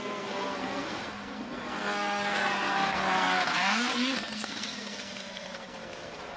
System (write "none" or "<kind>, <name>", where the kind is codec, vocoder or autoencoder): codec, SNAC